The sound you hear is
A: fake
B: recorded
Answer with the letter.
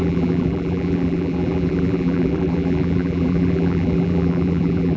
A